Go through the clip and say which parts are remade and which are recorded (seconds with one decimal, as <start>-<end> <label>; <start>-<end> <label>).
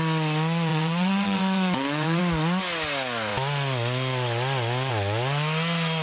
0.0-0.7 recorded; 0.7-2.2 remade; 2.2-6.0 recorded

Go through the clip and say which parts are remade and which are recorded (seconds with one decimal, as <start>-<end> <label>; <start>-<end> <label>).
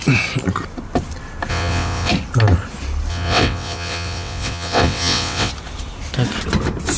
0.0-1.5 recorded; 1.5-2.1 remade; 2.1-3.1 recorded; 3.1-5.5 remade; 5.5-7.0 recorded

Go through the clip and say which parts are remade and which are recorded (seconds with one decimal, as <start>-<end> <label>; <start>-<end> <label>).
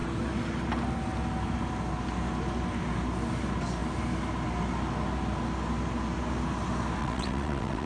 0.0-7.0 recorded; 7.0-7.9 remade